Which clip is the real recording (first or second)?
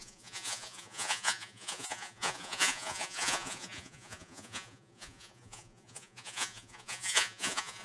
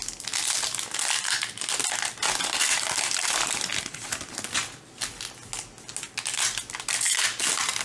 second